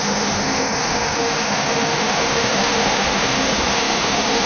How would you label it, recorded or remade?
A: remade